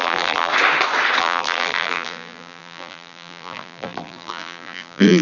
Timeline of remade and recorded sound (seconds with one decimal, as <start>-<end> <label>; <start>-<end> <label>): 0.0-0.5 remade; 0.5-1.2 recorded; 1.2-5.2 remade